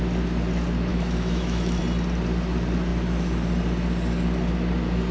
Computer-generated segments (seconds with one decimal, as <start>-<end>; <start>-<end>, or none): 0.9-1.8